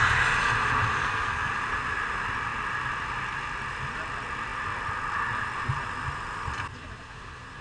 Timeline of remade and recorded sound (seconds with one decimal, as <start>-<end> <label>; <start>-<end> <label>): 0.0-1.0 recorded; 1.0-1.5 remade; 1.5-7.6 recorded